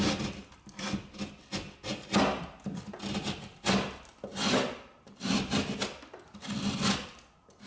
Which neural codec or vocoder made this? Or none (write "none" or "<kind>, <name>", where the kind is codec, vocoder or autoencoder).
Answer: none